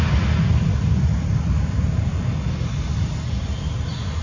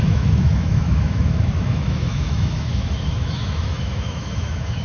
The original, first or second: first